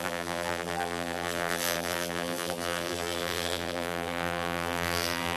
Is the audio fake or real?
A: fake